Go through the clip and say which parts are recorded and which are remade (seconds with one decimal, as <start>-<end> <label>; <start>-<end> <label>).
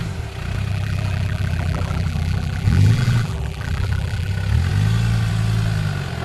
0.0-0.7 recorded; 0.7-4.3 remade; 4.3-6.2 recorded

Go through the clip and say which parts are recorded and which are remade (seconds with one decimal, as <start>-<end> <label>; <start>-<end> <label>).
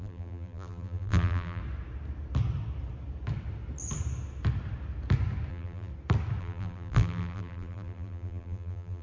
0.0-1.6 remade; 1.6-5.5 recorded; 5.5-5.9 remade; 5.9-6.4 recorded; 6.4-9.0 remade